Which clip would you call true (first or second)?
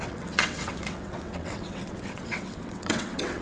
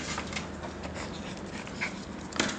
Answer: second